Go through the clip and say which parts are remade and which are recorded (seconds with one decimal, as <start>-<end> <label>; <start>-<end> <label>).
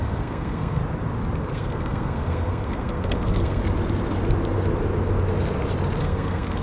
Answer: 0.0-0.8 remade; 0.8-1.5 recorded; 1.5-3.6 remade; 3.6-6.0 recorded; 6.0-6.6 remade